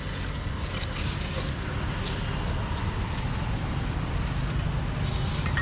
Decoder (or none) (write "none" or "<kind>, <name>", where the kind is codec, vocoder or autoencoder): none